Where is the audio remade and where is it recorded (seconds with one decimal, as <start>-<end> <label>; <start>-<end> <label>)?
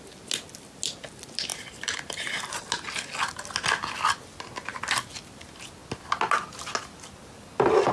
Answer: 0.0-1.5 recorded; 1.5-2.6 remade; 2.6-7.9 recorded